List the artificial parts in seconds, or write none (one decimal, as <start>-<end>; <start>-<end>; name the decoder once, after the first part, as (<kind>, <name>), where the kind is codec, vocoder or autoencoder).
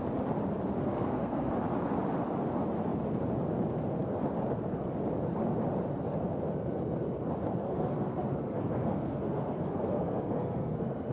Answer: 0.7-1.5 (codec, SNAC); 7.6-11.1